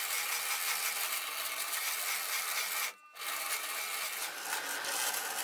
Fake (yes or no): no